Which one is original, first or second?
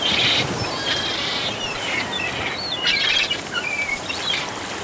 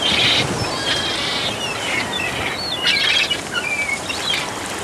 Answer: second